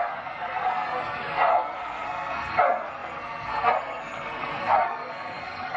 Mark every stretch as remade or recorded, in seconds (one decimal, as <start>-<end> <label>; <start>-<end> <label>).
0.0-5.8 remade